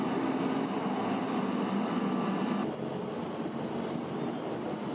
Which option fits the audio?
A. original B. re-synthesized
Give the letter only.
A